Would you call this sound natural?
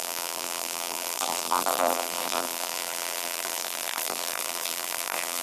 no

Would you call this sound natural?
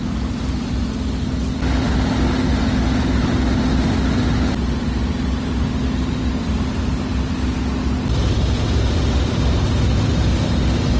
yes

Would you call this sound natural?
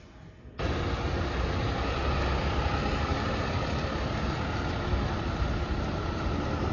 yes